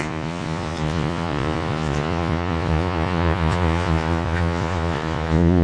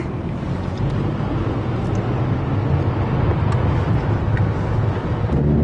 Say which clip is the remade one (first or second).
first